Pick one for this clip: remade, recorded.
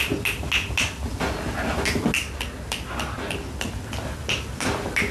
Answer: recorded